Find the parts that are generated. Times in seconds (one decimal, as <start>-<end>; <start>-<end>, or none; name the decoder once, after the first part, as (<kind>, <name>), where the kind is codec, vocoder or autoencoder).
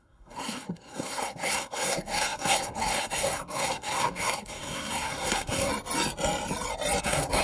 0.0-5.7 (codec, SNAC); 7.0-7.4